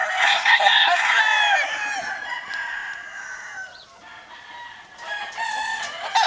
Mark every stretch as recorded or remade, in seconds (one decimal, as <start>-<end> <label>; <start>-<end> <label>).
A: 0.0-1.2 remade; 1.2-6.3 recorded